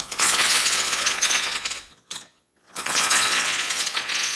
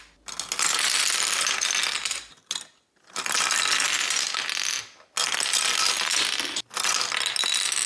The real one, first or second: second